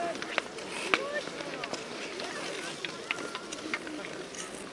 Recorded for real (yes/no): yes